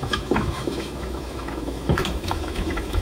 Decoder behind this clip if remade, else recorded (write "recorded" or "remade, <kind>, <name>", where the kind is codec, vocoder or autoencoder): remade, autoencoder, DAC-VAE